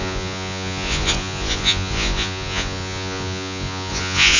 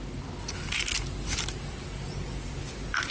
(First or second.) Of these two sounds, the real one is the second